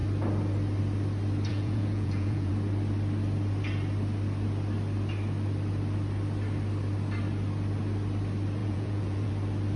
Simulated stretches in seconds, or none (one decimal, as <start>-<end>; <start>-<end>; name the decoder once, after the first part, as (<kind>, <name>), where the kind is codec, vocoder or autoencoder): 1.5-2.5 (vocoder, Vocos); 8.6-9.3